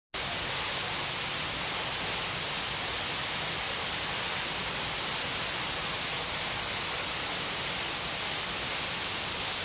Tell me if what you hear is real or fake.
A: real